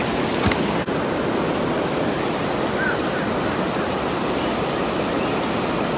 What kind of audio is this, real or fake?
real